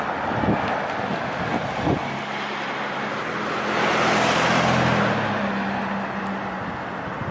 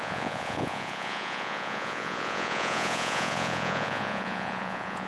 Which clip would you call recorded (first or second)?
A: first